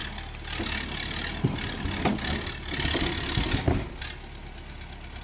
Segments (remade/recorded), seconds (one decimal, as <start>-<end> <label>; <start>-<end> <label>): 0.0-5.2 recorded